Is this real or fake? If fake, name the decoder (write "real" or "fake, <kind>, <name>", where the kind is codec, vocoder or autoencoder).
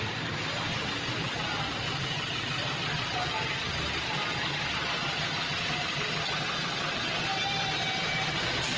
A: real